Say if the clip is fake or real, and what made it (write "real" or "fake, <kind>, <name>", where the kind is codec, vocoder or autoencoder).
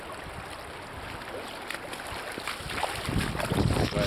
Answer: real